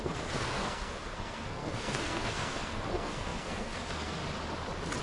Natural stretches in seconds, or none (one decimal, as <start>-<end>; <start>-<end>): 4.2-5.0